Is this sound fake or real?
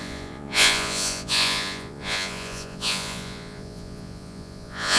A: fake